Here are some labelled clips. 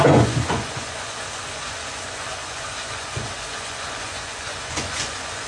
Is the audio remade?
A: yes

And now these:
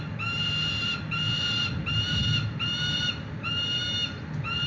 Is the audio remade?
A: no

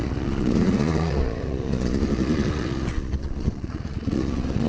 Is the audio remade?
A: yes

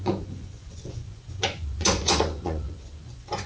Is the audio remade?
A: yes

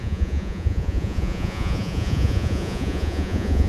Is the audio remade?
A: yes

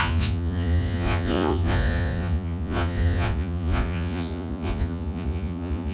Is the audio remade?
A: yes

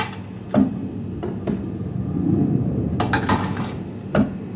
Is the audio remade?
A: no